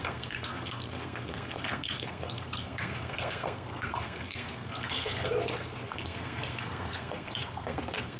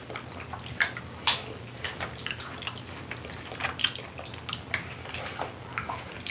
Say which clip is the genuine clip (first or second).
second